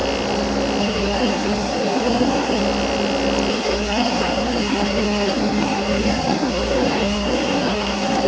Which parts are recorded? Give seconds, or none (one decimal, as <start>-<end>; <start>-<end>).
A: 0.0-0.8; 2.6-3.5